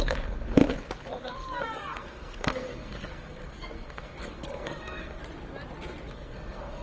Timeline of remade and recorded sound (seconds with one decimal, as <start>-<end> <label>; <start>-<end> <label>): 0.0-5.2 remade; 5.2-6.1 recorded; 6.1-6.8 remade